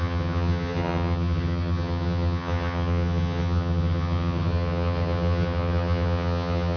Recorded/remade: remade